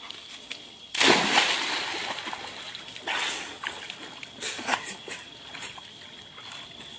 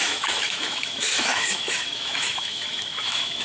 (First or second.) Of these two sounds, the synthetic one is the second